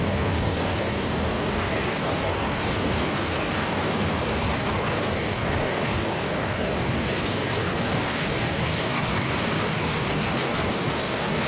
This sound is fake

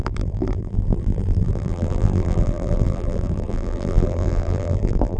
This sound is fake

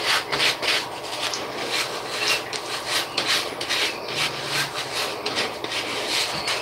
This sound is real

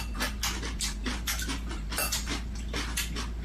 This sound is real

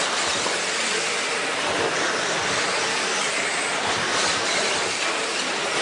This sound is real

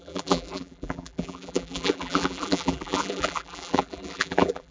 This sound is fake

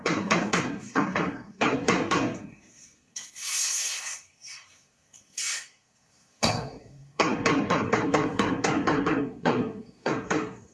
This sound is fake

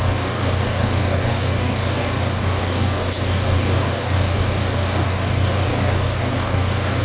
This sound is fake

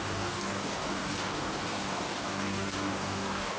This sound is fake